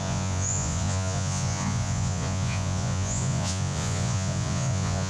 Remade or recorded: remade